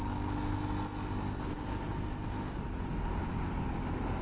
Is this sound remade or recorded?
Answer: recorded